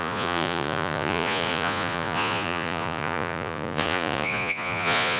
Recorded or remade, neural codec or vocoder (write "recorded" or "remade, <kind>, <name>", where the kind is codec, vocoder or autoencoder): remade, vocoder, Vocos